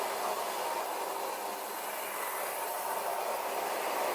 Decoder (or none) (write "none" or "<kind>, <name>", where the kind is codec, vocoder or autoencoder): none